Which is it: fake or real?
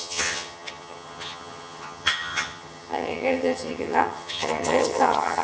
fake